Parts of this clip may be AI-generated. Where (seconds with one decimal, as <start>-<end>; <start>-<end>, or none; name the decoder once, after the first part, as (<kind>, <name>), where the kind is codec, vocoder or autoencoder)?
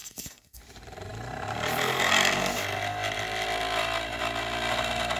0.0-0.6 (codec, SNAC)